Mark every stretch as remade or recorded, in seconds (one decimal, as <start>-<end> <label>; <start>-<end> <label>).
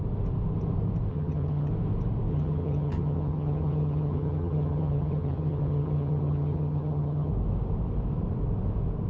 0.0-1.1 recorded; 1.1-1.7 remade; 1.7-2.3 recorded; 2.3-7.3 remade; 7.3-9.1 recorded